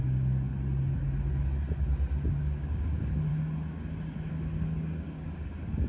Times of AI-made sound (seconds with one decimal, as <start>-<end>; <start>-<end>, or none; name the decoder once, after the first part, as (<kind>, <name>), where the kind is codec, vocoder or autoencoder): 0.0-0.5 (codec, DAC); 2.3-3.3; 4.3-5.9